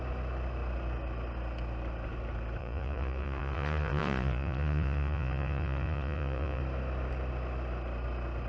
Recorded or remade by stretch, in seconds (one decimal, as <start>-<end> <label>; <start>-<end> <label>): 0.0-2.6 recorded; 2.6-6.6 remade; 6.6-8.5 recorded